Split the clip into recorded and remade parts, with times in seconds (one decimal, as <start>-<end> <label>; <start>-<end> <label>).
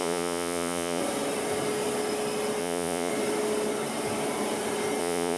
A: 0.0-1.0 remade; 1.0-2.6 recorded; 2.6-3.1 remade; 3.1-5.0 recorded; 5.0-5.4 remade